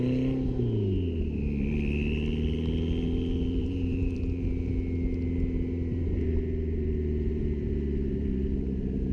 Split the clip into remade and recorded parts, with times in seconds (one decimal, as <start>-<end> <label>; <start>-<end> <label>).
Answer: 0.0-3.6 recorded; 3.6-4.2 remade; 4.2-5.9 recorded; 5.9-7.7 remade; 7.7-9.1 recorded